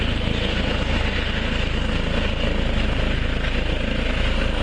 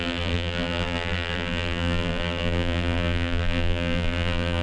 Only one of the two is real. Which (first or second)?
first